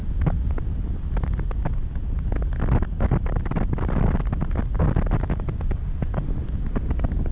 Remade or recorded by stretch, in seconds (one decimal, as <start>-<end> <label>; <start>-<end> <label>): 0.0-7.3 recorded